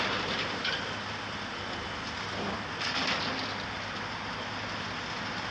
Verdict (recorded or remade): recorded